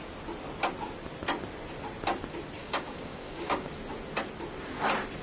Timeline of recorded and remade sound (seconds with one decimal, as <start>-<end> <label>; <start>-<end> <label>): 0.0-2.6 recorded; 2.6-3.7 remade; 3.7-5.2 recorded